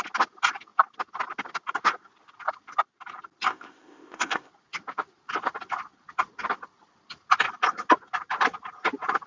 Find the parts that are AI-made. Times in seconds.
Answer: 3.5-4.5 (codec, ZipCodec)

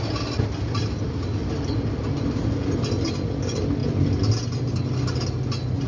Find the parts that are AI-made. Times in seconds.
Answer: none

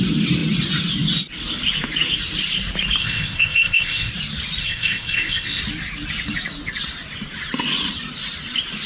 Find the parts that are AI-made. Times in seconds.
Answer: 3.0-4.1 (codec, ZipCodec); 4.6-5.6

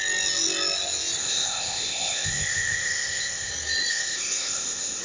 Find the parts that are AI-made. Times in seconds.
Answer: 1.2-3.5 (codec, ZipCodec); 3.9-5.0

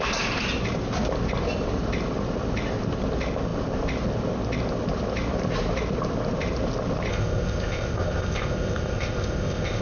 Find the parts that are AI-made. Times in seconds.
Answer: 7.1-9.8 (codec, ZipCodec)

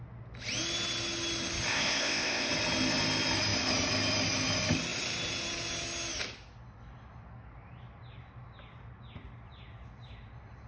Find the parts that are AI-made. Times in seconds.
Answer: 1.7-2.5 (codec, ZipCodec)

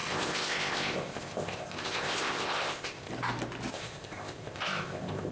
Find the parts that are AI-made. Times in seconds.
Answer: 0.0-3.1 (codec, ZipCodec); 3.7-5.3

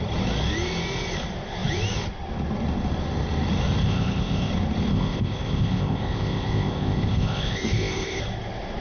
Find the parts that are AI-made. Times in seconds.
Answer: 3.8-4.5 (codec, ZipCodec); 4.9-8.2